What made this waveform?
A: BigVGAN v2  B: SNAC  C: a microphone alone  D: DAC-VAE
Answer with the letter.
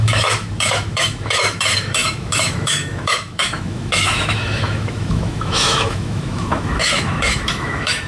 D